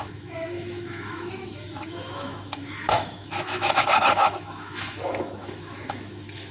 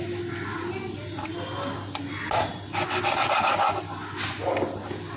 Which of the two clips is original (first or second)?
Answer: second